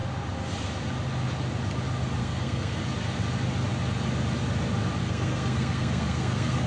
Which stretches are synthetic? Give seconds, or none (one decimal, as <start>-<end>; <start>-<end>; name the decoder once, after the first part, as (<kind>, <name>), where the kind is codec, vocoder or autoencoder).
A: 2.2-2.8 (codec, SNAC); 5.0-6.7